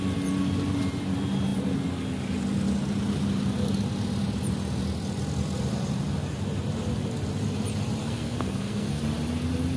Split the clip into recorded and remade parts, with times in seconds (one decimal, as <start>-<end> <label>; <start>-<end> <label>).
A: 0.0-8.0 recorded; 8.0-9.0 remade; 9.0-9.8 recorded